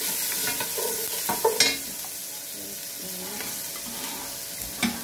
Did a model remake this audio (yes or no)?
no